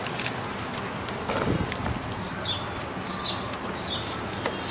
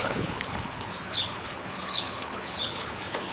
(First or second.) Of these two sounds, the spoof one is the second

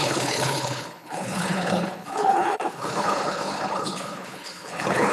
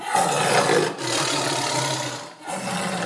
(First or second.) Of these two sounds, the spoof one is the first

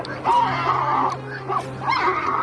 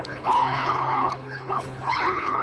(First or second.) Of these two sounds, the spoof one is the second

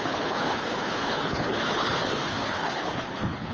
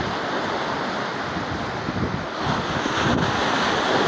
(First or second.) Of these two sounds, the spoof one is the first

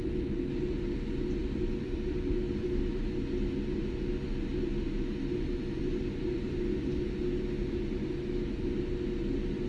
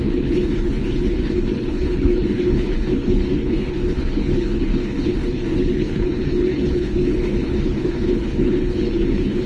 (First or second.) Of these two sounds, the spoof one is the second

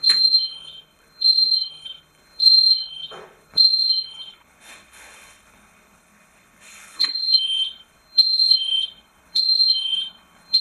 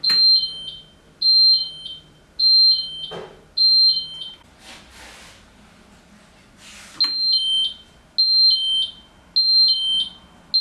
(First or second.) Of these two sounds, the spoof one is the first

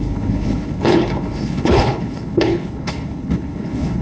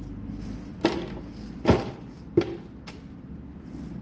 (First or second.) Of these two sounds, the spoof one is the first